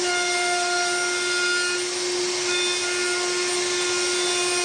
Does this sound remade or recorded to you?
recorded